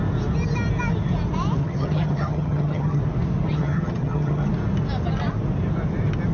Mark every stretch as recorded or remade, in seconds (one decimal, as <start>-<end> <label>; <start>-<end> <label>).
0.0-1.6 recorded; 1.6-3.0 remade; 3.0-3.5 recorded; 3.5-4.5 remade; 4.5-6.3 recorded